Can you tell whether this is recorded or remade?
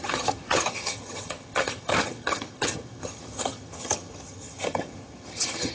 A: remade